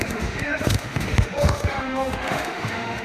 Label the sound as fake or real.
fake